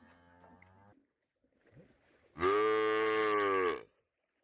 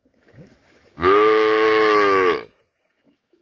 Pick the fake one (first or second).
second